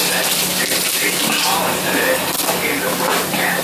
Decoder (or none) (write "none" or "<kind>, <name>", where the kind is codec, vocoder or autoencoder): none